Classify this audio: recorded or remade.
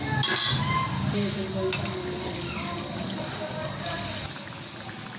recorded